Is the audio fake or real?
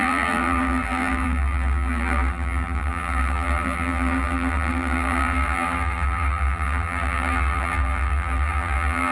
fake